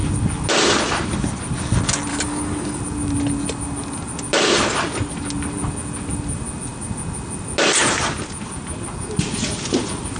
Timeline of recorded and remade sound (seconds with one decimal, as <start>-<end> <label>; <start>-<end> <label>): 0.0-2.1 recorded; 2.1-2.8 remade; 2.8-10.2 recorded